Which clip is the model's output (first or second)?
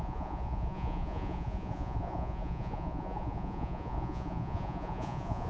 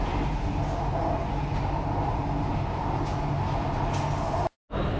first